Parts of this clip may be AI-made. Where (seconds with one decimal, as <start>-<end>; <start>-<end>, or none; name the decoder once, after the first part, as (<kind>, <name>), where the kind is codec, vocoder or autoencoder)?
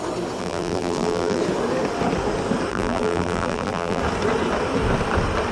0.4-1.4 (vocoder, BigVGAN v2); 2.7-4.0